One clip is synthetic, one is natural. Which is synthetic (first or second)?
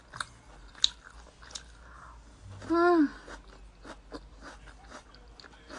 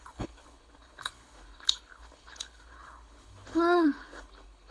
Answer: second